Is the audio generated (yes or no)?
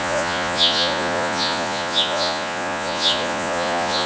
yes